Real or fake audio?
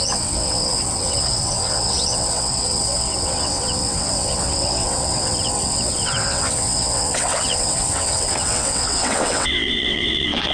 fake